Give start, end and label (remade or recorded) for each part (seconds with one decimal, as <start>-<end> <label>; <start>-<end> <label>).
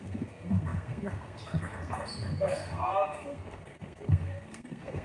0.0-5.0 remade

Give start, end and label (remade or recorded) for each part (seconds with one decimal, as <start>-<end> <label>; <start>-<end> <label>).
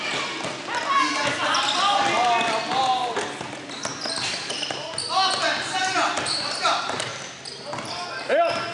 0.0-8.7 recorded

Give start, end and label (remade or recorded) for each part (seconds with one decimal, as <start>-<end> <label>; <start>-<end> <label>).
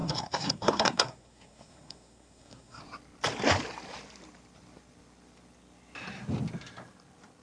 0.0-2.8 remade; 2.8-7.4 recorded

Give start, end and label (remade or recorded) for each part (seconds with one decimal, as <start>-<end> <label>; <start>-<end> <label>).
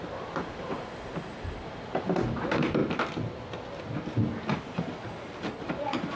0.0-2.8 remade; 2.8-5.6 recorded; 5.6-6.2 remade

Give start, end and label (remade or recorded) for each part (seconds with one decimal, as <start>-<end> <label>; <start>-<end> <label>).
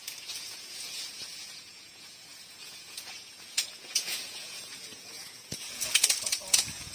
0.0-6.9 remade